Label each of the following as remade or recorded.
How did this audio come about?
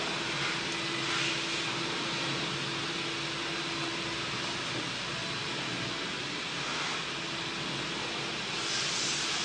recorded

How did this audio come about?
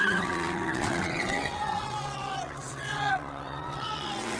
remade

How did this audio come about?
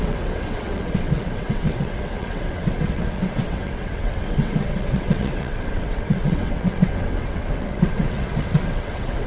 remade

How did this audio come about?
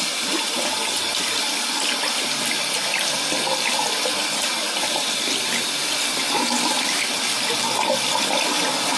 recorded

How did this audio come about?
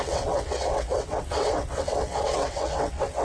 remade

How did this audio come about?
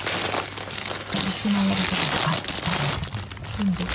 recorded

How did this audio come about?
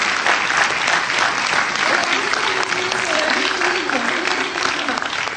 recorded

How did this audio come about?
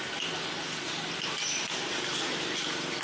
recorded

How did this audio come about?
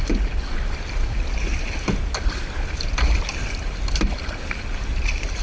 recorded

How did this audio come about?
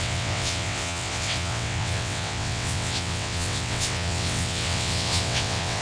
remade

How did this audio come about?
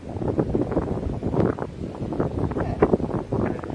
recorded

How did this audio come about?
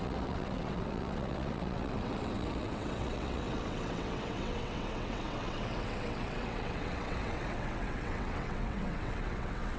remade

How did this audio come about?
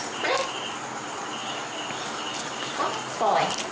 recorded